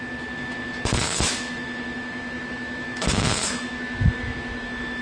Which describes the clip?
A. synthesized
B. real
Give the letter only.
A